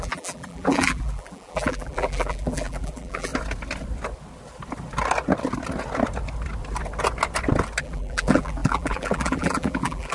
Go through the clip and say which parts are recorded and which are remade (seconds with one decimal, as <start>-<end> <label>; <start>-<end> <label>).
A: 0.0-3.3 remade; 3.3-7.8 recorded; 7.8-10.1 remade